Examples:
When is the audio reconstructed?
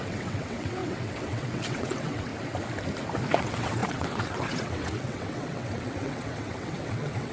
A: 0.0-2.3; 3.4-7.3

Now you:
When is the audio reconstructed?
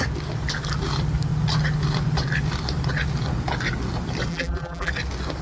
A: 4.3-4.9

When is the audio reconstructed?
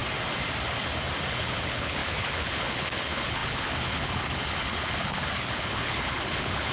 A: 1.3-6.7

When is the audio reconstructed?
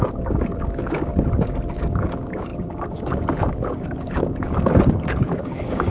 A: 0.0-1.1; 1.7-5.9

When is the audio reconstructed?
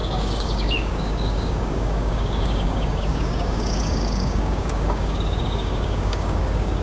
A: 0.0-6.8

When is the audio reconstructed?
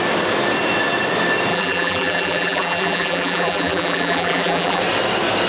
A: 1.5-4.8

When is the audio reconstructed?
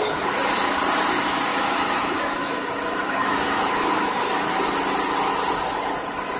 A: 1.5-4.5